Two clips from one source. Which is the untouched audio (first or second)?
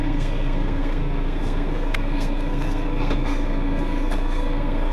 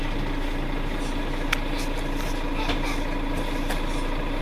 second